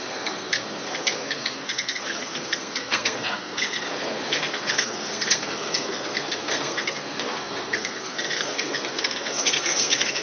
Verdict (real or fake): fake